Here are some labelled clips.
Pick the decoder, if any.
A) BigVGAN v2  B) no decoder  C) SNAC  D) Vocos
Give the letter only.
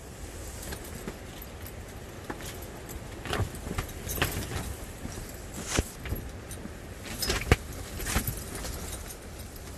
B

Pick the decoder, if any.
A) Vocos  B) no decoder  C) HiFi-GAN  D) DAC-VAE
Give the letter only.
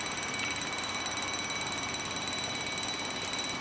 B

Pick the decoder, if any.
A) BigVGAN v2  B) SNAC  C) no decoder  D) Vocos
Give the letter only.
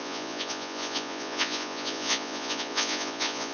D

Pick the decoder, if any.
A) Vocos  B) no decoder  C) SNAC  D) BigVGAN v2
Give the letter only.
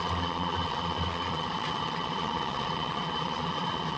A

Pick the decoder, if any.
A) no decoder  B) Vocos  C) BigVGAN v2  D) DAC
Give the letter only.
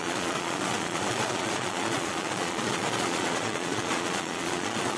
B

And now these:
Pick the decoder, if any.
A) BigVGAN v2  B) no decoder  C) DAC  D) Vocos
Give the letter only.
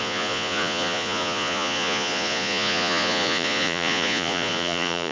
D